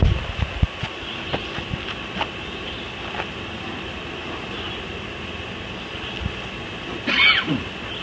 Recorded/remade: recorded